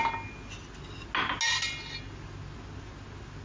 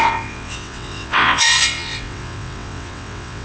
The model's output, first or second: second